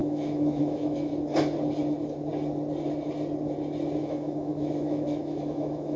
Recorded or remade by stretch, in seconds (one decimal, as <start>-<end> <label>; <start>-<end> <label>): 0.0-1.1 remade; 1.1-4.0 recorded; 4.0-6.0 remade